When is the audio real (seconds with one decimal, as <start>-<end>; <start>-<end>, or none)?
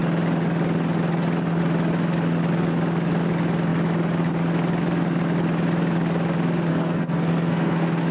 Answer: 0.0-6.7